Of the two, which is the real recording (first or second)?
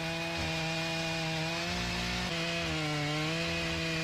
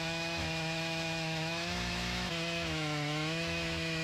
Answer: first